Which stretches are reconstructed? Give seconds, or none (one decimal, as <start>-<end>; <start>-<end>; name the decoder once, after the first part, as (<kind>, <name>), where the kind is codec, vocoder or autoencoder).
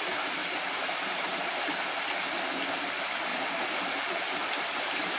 none